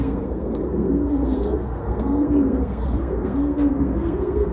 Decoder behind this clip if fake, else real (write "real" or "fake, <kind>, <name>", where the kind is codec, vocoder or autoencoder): fake, codec, SNAC